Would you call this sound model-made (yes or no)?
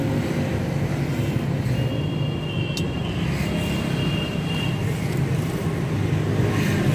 no